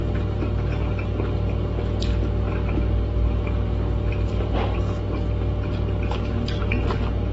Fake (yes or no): no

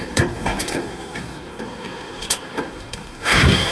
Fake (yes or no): yes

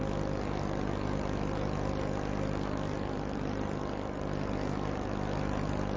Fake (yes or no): no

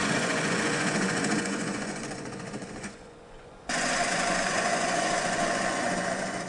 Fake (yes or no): yes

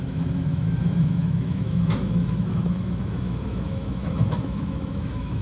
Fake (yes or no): yes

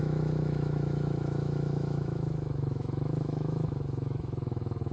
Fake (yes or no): yes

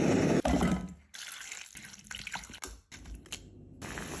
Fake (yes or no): no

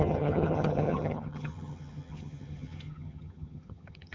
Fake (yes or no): yes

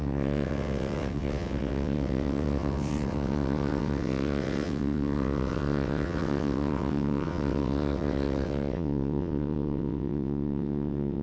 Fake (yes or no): yes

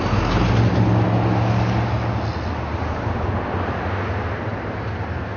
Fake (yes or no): no